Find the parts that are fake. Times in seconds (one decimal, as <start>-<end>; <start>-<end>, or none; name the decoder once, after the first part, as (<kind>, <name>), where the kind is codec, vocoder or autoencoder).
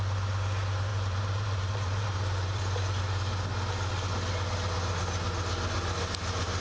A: 0.9-3.0 (vocoder, BigVGAN v2)